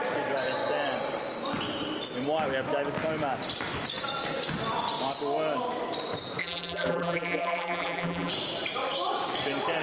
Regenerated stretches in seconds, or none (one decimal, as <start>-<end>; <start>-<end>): 6.4-8.3